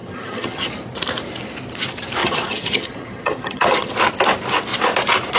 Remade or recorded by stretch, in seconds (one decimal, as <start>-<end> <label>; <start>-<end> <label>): 0.0-0.7 remade; 0.7-2.2 recorded; 2.2-3.9 remade; 3.9-5.4 recorded